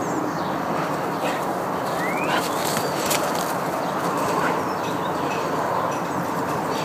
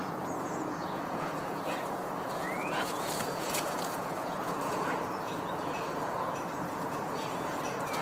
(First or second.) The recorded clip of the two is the first